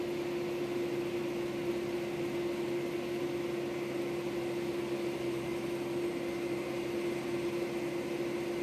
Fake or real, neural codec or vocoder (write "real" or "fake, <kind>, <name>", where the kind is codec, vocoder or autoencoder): real